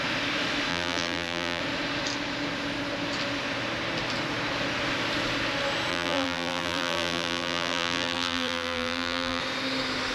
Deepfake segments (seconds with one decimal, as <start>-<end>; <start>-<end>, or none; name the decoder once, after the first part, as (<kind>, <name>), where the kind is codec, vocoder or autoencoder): 0.7-1.6 (vocoder, BigVGAN v2); 5.9-9.4